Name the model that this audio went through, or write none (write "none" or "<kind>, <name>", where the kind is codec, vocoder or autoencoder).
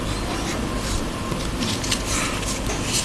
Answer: none